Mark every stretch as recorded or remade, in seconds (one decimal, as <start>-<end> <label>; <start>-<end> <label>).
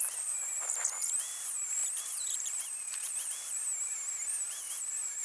0.0-3.7 remade; 3.7-4.4 recorded; 4.4-5.2 remade